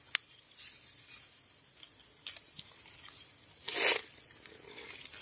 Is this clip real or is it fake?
real